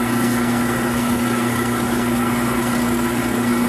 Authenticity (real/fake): fake